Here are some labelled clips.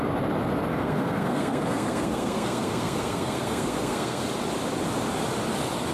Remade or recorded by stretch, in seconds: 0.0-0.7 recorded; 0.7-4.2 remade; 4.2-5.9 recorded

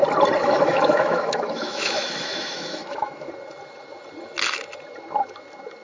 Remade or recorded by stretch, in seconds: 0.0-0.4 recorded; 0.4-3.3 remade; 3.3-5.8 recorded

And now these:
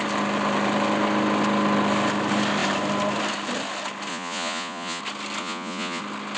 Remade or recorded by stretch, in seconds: 0.0-4.1 recorded; 4.1-5.0 remade; 5.0-5.4 recorded; 5.4-6.0 remade; 6.0-6.4 recorded

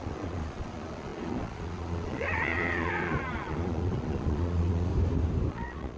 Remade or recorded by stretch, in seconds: 0.0-4.9 remade; 4.9-5.5 recorded; 5.5-6.0 remade